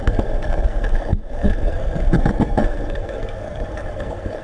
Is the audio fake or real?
fake